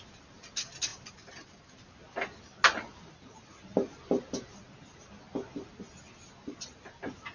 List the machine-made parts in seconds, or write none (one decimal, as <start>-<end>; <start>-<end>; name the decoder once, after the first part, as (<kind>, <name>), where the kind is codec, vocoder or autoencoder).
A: none

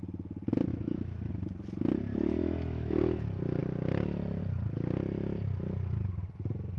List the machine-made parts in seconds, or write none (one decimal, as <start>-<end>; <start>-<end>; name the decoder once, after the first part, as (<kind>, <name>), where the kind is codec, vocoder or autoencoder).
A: 0.7-1.3 (autoencoder, DAC-VAE); 2.4-3.0